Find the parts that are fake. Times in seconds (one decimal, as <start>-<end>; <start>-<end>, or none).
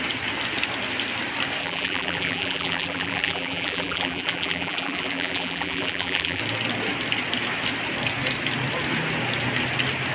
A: 1.6-6.4